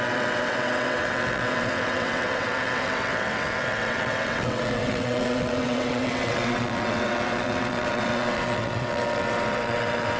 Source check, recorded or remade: remade